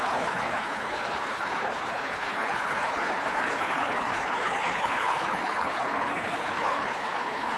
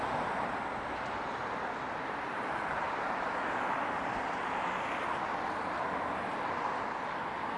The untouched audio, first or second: second